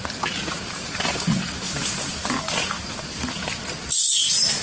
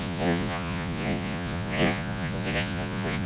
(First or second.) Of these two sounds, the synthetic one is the second